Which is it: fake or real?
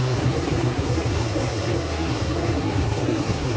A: fake